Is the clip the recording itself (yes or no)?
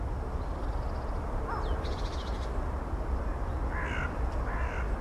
yes